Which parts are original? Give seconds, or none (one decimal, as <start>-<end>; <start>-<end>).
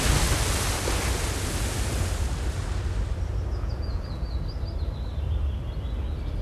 0.0-3.5; 4.2-6.4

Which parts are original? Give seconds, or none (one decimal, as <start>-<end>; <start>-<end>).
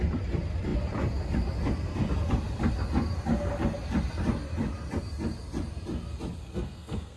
0.0-6.4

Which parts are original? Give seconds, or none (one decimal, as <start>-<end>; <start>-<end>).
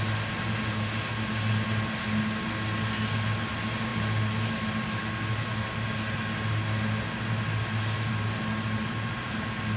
0.0-9.8